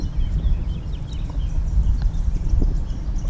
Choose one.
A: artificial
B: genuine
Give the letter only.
B